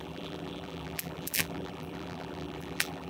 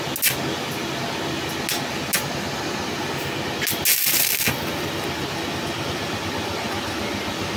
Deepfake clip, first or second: first